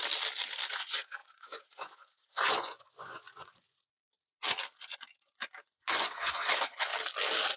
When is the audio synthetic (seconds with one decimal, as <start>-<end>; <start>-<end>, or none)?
0.7-4.0; 5.6-6.9